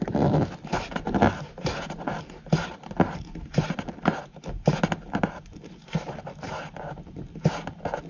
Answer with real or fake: real